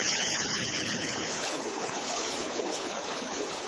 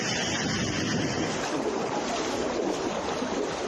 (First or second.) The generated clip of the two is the first